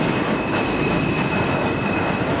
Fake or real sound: real